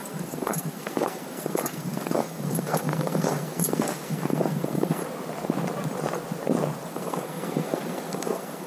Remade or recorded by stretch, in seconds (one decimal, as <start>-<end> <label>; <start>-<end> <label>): 0.0-5.0 remade; 5.0-6.9 recorded; 6.9-8.7 remade